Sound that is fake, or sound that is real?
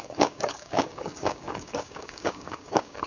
fake